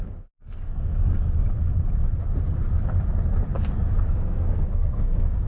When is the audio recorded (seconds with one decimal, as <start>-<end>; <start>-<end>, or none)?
0.9-4.0